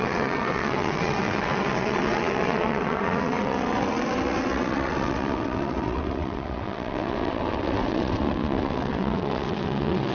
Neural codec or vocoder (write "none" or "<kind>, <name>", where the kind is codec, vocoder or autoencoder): vocoder, WaveNeXt